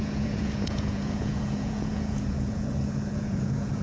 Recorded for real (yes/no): no